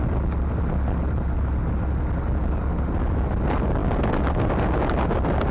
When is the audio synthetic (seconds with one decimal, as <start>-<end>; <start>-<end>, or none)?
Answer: none